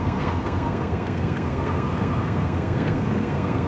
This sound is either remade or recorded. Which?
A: remade